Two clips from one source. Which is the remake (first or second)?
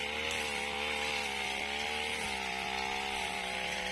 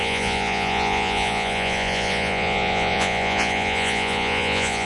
second